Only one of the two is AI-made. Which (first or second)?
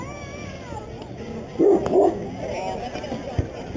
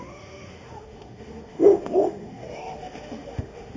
second